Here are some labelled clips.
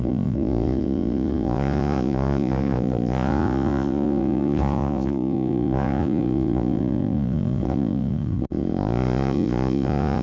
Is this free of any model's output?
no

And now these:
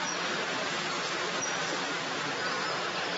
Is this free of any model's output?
yes